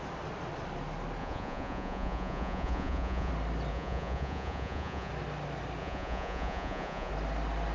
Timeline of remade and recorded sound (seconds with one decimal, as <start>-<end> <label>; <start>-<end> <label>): 0.0-1.2 recorded; 1.2-3.3 remade; 3.3-3.7 recorded; 3.7-5.1 remade; 5.1-5.8 recorded; 5.8-7.1 remade; 7.1-7.7 recorded